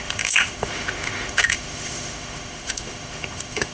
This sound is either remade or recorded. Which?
remade